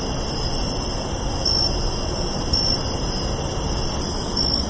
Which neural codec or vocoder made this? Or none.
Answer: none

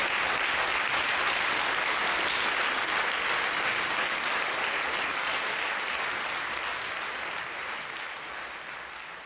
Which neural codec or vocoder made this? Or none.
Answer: none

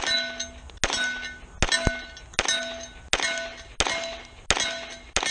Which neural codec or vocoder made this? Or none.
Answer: none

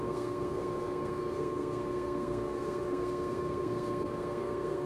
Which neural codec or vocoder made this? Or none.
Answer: codec, SNAC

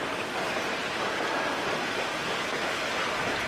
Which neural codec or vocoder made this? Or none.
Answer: none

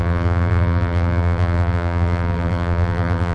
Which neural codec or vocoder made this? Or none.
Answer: vocoder, BigVGAN v2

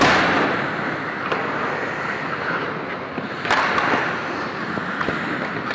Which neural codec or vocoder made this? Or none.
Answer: none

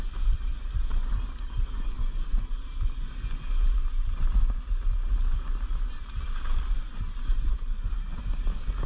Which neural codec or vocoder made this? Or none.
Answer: none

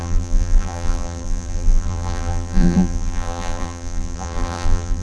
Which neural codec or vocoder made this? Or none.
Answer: vocoder, BigVGAN v2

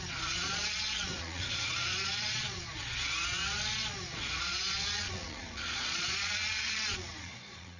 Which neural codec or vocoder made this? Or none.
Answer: vocoder, Vocos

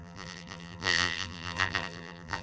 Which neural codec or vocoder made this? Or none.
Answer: vocoder, BigVGAN v2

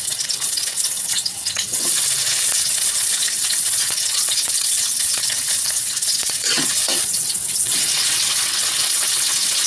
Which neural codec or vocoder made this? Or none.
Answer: vocoder, WaveNeXt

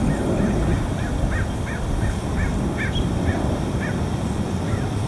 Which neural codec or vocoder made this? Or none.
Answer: none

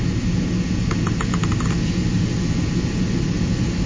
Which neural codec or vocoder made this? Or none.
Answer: none